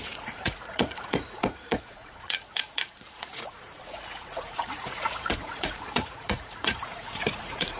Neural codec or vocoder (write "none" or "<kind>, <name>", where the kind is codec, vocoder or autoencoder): vocoder, Vocos